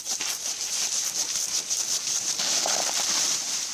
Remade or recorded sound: recorded